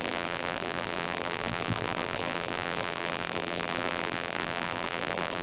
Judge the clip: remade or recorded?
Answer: remade